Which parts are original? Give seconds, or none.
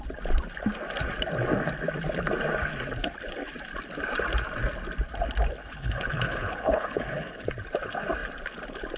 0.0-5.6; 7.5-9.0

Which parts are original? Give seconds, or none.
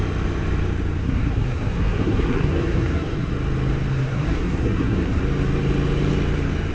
0.0-1.0; 3.3-3.9; 5.2-6.7